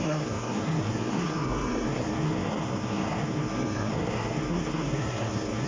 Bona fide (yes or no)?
no